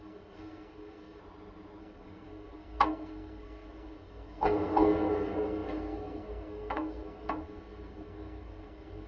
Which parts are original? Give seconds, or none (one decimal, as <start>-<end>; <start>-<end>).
1.2-1.8